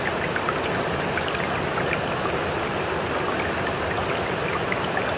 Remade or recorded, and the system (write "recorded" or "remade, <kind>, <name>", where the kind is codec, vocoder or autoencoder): recorded